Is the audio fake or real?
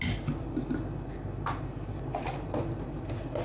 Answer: real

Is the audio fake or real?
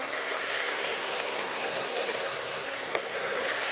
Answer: fake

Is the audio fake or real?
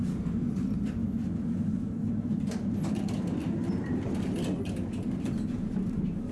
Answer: real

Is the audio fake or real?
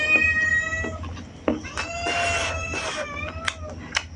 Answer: real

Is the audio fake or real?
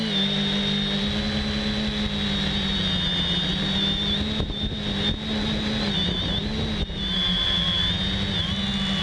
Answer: real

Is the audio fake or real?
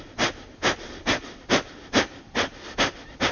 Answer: real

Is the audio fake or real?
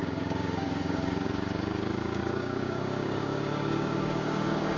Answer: fake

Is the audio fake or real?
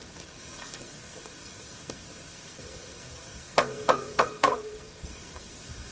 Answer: fake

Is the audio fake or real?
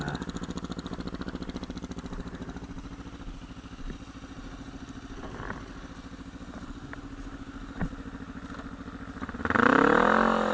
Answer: real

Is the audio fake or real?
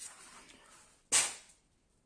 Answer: real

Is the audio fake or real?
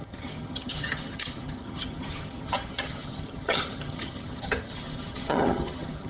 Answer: fake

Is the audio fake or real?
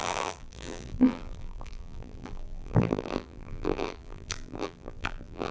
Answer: fake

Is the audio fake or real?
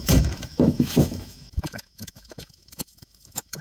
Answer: fake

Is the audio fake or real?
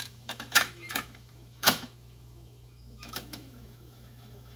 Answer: fake